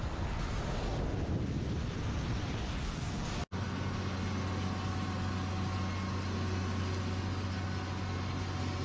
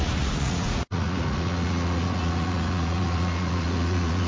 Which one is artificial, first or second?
second